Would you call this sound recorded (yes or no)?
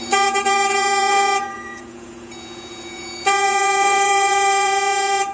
no